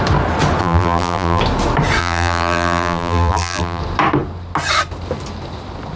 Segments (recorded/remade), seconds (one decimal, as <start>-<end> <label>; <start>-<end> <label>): 0.0-0.6 recorded; 0.6-1.4 remade; 1.4-2.0 recorded; 2.0-3.8 remade; 3.8-6.0 recorded